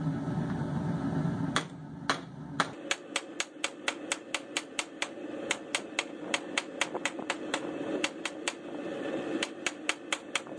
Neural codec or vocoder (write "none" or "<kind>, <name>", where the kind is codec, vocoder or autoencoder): none